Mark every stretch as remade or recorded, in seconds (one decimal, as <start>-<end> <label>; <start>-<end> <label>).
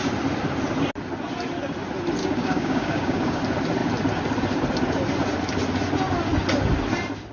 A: 0.0-2.2 recorded; 2.2-3.4 remade; 3.4-7.3 recorded